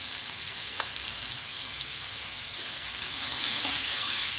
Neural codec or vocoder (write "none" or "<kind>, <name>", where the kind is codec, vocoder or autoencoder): codec, SNAC